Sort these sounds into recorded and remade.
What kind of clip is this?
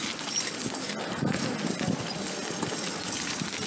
recorded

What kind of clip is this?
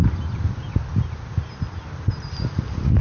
recorded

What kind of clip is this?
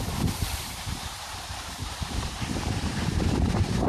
remade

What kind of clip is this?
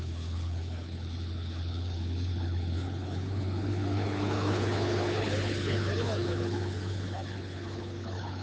remade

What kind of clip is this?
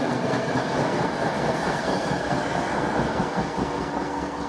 remade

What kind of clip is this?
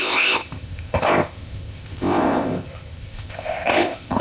remade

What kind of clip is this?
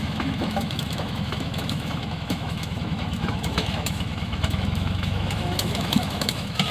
remade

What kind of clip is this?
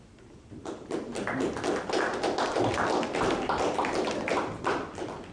recorded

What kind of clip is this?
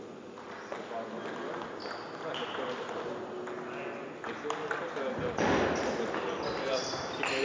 recorded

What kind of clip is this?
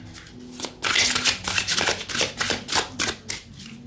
recorded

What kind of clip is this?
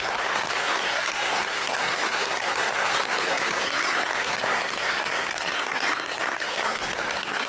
remade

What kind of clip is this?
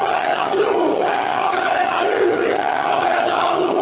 remade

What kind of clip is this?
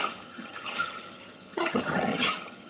remade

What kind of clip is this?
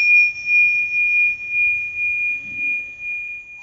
remade